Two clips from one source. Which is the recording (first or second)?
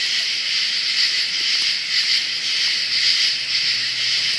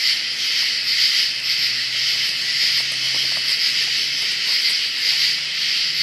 second